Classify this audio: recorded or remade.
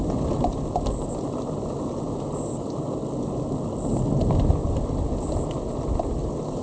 recorded